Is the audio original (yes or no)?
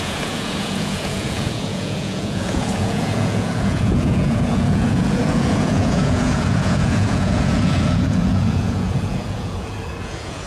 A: no